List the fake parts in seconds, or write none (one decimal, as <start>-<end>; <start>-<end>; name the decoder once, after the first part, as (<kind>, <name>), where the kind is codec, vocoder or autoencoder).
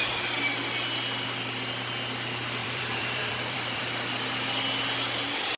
2.6-3.8 (vocoder, BigVGAN v2)